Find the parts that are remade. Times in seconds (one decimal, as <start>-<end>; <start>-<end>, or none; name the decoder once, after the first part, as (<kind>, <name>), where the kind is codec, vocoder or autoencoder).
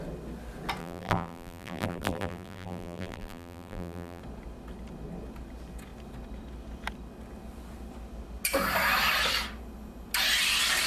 0.8-4.2 (vocoder, BigVGAN v2)